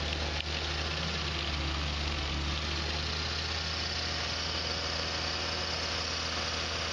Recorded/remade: recorded